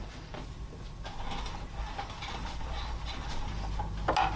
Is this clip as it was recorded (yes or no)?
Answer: yes